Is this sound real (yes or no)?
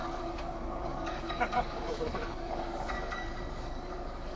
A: no